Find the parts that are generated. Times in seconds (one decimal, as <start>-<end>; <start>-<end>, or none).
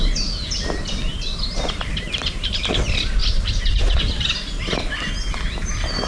1.1-2.5; 3.2-4.0